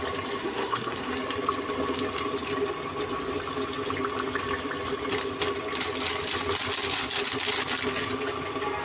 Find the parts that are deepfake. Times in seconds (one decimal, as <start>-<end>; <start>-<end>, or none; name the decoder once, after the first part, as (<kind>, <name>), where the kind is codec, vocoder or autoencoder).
0.4-1.1 (codec, SNAC)